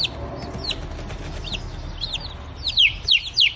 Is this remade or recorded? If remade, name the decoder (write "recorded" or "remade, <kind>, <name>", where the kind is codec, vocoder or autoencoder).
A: recorded